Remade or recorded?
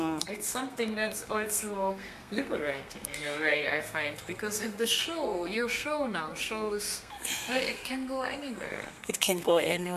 remade